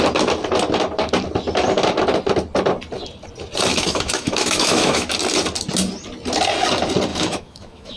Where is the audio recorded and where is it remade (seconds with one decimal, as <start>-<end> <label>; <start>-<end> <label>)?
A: 0.0-3.7 recorded; 3.7-5.1 remade; 5.1-7.1 recorded; 7.1-8.0 remade